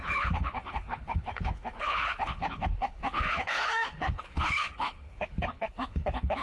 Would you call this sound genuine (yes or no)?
no